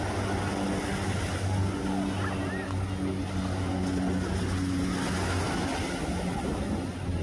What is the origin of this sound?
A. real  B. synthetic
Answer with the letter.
A